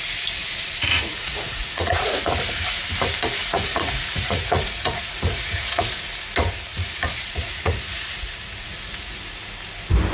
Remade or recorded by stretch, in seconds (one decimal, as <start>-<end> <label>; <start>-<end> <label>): 0.0-0.4 recorded; 0.4-2.3 remade; 2.3-3.4 recorded; 3.4-6.2 remade; 6.2-6.7 recorded; 6.7-9.2 remade; 9.2-10.1 recorded